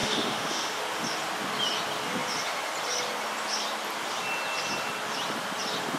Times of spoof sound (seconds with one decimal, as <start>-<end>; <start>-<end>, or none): 0.0-0.8